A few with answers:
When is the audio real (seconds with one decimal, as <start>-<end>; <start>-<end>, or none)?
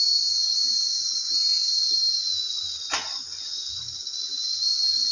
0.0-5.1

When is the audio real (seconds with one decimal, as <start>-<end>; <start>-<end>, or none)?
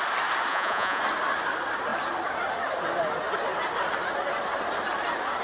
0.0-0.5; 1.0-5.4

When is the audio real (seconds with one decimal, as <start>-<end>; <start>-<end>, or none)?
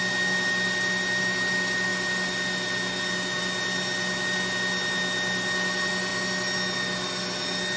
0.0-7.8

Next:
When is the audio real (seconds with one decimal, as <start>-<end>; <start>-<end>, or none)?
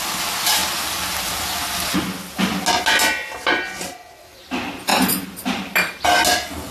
0.0-6.7